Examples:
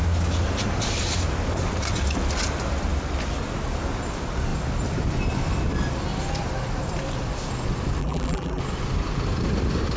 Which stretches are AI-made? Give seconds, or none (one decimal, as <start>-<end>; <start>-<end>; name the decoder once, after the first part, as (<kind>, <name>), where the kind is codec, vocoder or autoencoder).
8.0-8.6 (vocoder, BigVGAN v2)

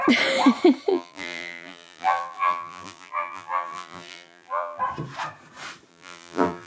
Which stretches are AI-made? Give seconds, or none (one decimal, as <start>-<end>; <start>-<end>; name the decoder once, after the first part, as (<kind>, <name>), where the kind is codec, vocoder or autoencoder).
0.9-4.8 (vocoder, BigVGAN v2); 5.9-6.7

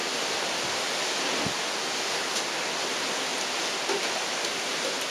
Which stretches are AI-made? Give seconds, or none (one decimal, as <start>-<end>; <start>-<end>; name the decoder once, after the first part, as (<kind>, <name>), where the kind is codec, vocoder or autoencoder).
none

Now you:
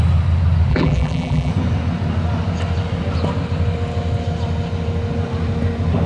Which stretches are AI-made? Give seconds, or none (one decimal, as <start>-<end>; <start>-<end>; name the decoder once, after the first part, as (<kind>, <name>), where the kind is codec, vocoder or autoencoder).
0.7-1.5 (vocoder, BigVGAN v2)

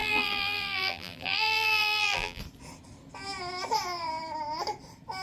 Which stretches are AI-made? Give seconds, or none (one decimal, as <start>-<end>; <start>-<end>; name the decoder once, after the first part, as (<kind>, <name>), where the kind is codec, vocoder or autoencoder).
0.0-2.4 (vocoder, BigVGAN v2)

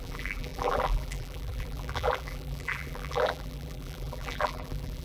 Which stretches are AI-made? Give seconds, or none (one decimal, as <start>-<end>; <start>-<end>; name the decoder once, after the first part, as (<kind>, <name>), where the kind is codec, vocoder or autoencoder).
0.0-5.0 (vocoder, BigVGAN v2)